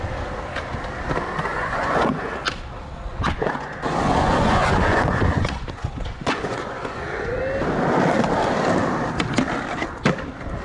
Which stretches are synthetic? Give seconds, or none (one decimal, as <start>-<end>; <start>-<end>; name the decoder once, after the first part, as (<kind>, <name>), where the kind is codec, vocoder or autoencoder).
1.5-2.4 (vocoder, Vocos); 3.1-7.4